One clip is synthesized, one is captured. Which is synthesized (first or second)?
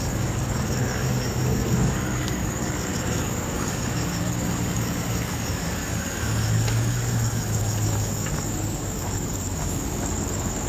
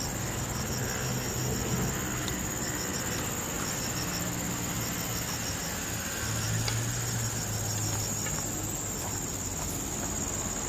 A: first